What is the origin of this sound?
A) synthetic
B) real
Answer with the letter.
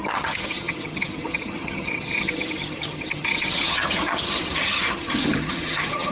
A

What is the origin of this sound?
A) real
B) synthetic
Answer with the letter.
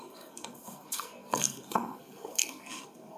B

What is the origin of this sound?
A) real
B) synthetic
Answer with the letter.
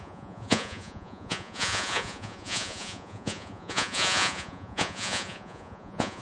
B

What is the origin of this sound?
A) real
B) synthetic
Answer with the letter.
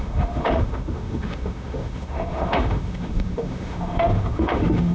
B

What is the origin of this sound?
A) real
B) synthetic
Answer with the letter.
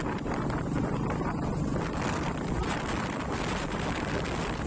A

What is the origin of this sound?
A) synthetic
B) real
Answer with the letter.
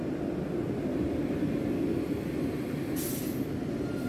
B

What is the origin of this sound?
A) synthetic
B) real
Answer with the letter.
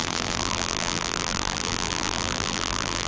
A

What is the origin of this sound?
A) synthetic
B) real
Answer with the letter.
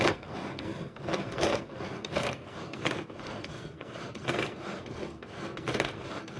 A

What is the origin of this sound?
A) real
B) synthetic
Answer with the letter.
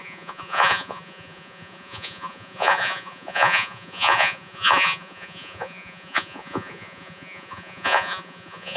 B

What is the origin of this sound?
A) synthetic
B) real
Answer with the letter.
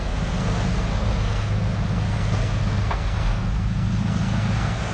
A